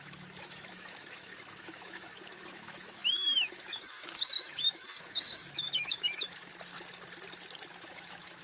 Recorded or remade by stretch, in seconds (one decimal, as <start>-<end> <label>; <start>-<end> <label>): 0.0-6.5 remade; 6.5-7.7 recorded; 7.7-8.4 remade